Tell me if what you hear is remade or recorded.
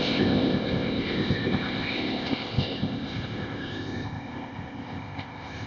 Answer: remade